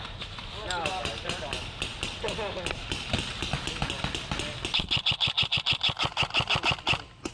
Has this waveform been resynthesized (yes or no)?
no